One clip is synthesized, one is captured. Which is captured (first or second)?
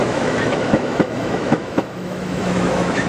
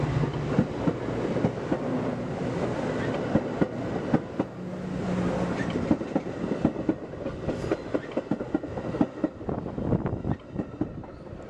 second